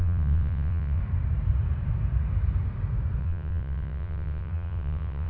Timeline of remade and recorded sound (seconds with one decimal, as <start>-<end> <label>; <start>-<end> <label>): 0.0-1.0 remade; 1.0-3.2 recorded; 3.2-5.3 remade